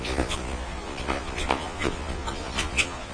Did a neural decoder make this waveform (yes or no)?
yes